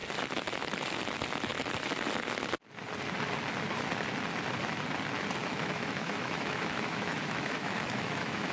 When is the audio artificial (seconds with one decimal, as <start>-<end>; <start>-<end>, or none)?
5.4-8.5